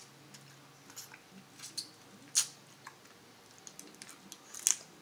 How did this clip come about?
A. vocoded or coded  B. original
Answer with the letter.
B